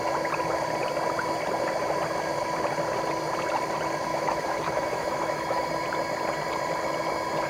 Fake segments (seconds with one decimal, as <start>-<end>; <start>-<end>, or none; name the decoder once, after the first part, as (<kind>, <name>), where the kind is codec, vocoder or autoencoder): 4.1-5.7 (autoencoder, DAC-VAE)